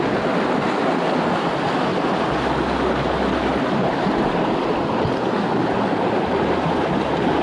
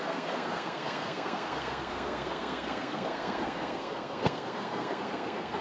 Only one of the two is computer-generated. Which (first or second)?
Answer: second